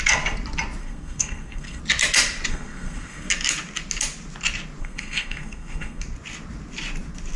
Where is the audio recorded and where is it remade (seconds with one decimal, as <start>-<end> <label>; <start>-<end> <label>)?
0.0-0.8 recorded; 0.8-1.8 remade; 1.8-2.5 recorded; 2.5-3.3 remade; 3.3-4.8 recorded; 4.8-6.0 remade; 6.0-7.4 recorded